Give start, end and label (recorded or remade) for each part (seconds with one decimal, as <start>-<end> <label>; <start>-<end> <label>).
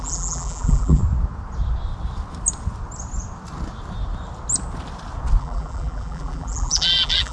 0.0-1.0 remade; 1.0-5.4 recorded; 5.4-7.3 remade